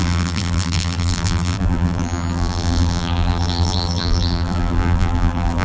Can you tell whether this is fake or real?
fake